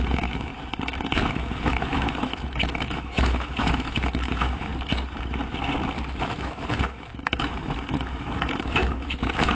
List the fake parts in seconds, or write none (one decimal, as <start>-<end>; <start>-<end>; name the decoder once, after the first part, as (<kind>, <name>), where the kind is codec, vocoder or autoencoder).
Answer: 0.0-0.5 (autoencoder, DAC-VAE); 1.3-4.7; 6.2-9.5